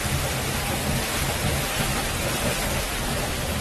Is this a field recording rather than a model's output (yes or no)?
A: yes